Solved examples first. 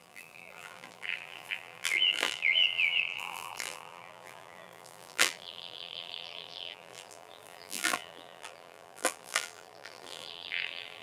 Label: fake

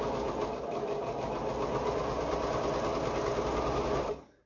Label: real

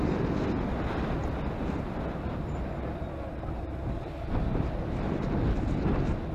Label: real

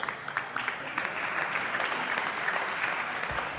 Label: real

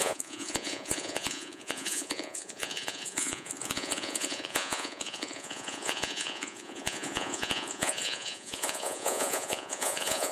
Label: fake